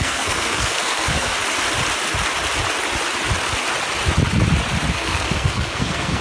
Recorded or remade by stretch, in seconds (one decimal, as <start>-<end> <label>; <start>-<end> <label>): 0.0-1.4 remade; 1.4-4.9 recorded; 4.9-6.2 remade